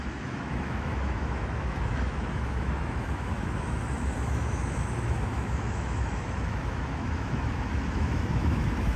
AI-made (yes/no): yes